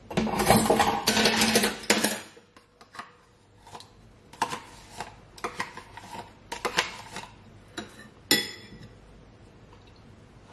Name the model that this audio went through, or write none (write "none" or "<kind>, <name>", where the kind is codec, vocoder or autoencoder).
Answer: none